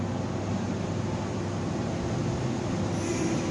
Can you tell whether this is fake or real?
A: real